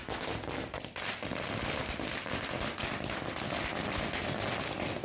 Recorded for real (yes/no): yes